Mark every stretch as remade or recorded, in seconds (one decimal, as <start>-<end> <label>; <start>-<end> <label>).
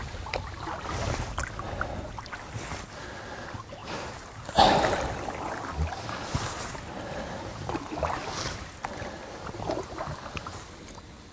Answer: 0.0-11.3 recorded